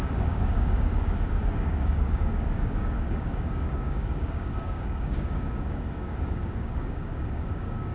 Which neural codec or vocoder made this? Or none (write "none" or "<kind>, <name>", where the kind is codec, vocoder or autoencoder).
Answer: codec, DAC